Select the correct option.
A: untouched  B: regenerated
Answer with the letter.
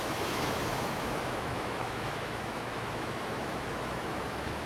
B